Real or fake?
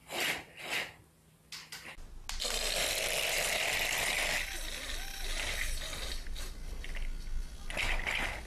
real